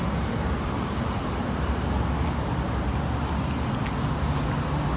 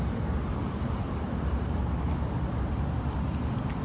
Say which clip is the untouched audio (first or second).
first